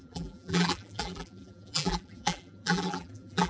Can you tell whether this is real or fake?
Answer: fake